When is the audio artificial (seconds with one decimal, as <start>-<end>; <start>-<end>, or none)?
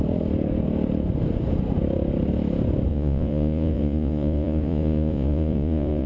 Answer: 2.9-6.1